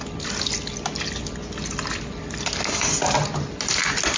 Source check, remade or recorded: recorded